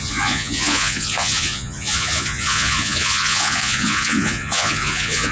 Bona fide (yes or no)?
no